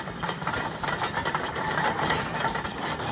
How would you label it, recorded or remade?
remade